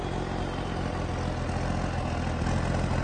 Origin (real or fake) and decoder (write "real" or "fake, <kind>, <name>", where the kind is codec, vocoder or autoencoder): real